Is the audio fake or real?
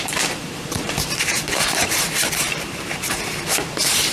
fake